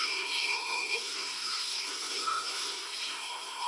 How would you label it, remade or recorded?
remade